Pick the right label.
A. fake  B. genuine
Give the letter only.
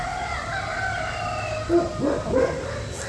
B